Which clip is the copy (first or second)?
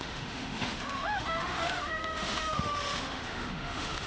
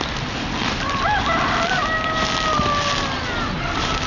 first